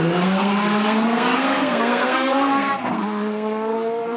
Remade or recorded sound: remade